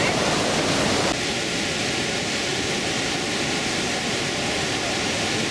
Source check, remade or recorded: recorded